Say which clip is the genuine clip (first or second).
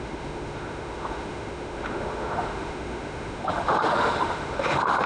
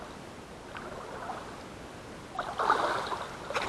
second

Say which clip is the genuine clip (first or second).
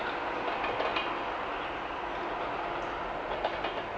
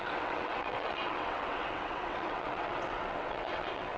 first